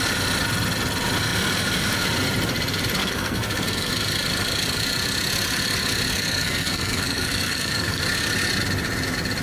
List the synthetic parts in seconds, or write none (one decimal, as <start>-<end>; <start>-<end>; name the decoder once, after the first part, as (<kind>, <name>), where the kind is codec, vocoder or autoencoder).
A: 3.0-3.9 (codec, SNAC); 6.1-8.0